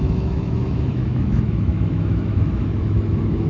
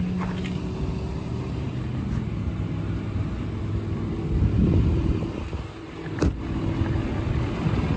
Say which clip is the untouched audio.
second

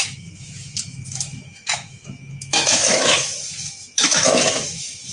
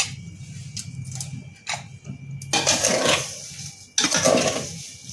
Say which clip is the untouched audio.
second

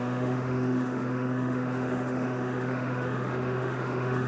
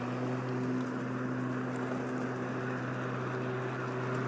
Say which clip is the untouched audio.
second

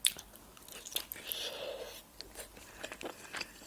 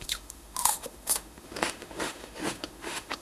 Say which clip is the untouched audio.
first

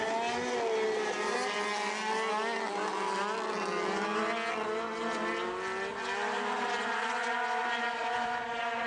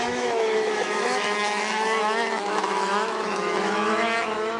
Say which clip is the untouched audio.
first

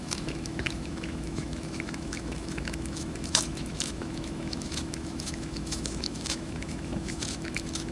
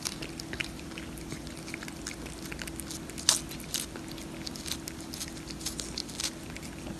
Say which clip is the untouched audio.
second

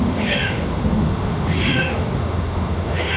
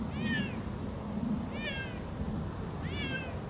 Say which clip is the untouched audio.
second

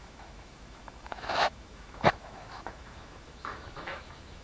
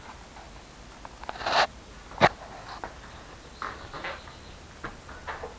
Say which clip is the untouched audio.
second